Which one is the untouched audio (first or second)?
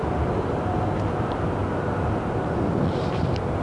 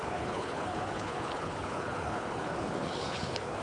first